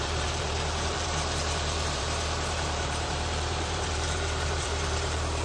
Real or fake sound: fake